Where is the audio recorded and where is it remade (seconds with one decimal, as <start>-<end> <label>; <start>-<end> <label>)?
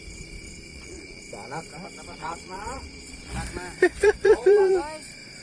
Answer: 0.0-0.7 recorded; 0.7-1.2 remade; 1.2-2.2 recorded; 2.2-3.3 remade; 3.3-3.9 recorded; 3.9-4.7 remade; 4.7-5.4 recorded